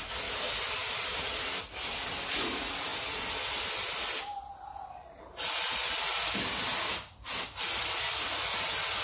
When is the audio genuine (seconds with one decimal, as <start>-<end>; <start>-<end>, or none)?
0.0-0.8; 1.5-9.0

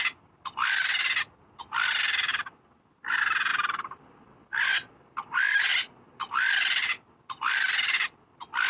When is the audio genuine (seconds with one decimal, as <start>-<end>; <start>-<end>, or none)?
0.0-8.7

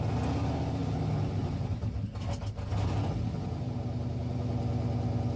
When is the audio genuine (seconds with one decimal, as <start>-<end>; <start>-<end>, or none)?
0.0-2.7; 3.7-5.4

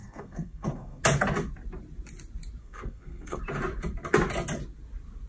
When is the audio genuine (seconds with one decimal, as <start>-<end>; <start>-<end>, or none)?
1.0-2.6; 3.4-5.3

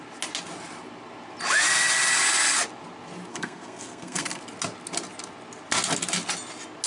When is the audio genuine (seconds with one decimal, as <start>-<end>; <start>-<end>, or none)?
0.0-3.3; 4.4-6.9